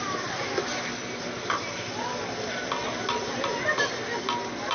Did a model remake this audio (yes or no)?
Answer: no